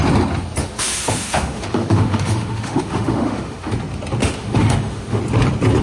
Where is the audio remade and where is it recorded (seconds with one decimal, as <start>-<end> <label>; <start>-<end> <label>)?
0.0-0.6 recorded; 0.6-3.7 remade; 3.7-4.2 recorded; 4.2-5.2 remade; 5.2-5.8 recorded